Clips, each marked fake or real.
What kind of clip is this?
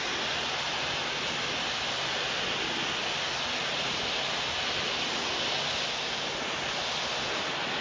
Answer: real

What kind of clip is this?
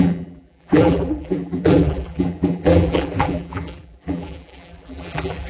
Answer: fake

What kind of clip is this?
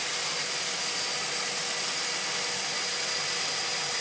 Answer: real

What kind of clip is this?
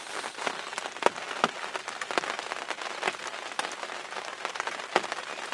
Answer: real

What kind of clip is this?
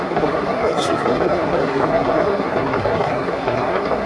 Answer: fake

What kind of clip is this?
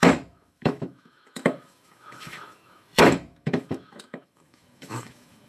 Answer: fake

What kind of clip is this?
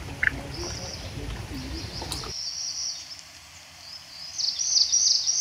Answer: real